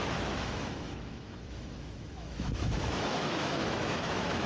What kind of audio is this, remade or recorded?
remade